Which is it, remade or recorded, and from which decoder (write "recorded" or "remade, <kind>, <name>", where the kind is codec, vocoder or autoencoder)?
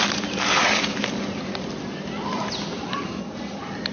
recorded